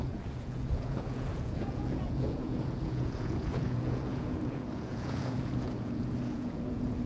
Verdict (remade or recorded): remade